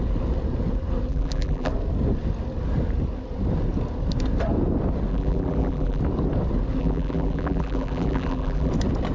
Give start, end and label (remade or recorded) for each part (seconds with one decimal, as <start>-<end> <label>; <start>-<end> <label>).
0.0-1.1 recorded; 1.1-1.7 remade; 1.7-5.1 recorded; 5.1-6.0 remade; 6.0-6.8 recorded; 6.8-8.7 remade; 8.7-9.1 recorded